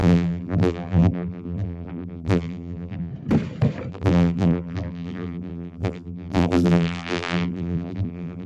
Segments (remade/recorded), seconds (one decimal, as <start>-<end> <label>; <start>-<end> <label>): 0.0-3.1 remade; 3.1-3.9 recorded; 3.9-8.5 remade